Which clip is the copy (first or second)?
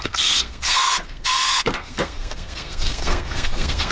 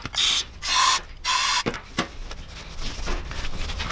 first